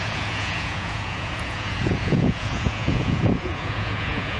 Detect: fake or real fake